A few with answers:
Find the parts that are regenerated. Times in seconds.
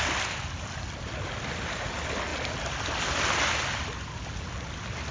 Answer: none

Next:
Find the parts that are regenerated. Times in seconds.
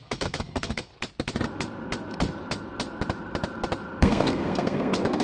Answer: 0.0-0.9 (codec, SNAC); 4.0-5.2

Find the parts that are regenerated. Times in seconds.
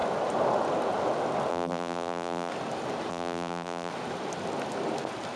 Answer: 1.5-2.5 (vocoder, BigVGAN v2); 3.1-3.9